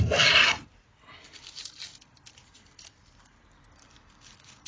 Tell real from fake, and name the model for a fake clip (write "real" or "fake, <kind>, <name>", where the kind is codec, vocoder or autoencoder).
real